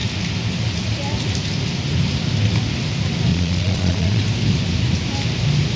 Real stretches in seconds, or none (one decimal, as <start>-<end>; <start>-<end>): 0.0-3.3; 4.2-5.8